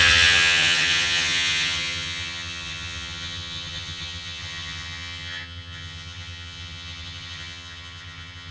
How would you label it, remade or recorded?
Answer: remade